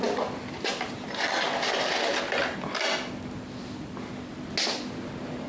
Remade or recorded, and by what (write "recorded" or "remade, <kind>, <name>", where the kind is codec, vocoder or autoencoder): recorded